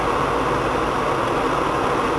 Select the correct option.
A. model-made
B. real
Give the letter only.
B